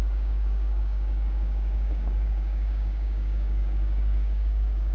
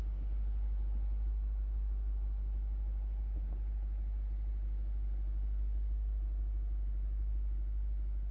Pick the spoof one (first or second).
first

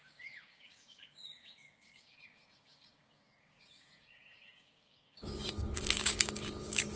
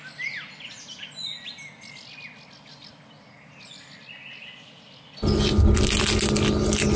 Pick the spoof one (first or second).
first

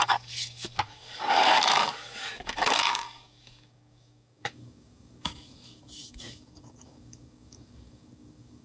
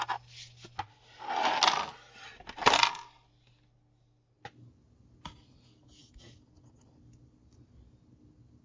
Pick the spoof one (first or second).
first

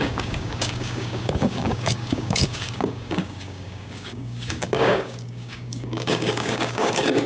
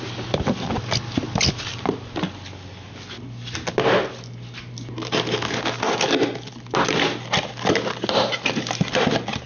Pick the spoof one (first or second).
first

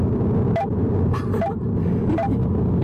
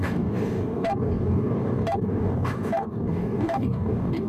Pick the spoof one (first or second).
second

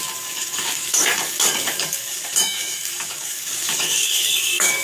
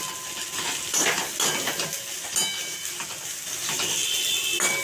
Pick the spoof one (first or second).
first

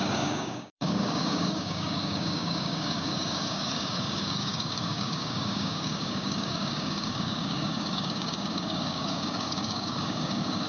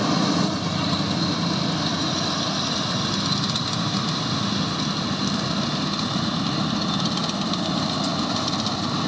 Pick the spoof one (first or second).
first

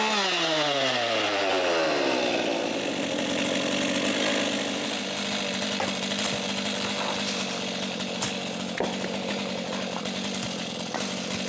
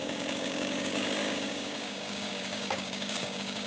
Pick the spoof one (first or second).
second